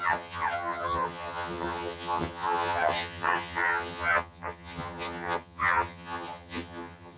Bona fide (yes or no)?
no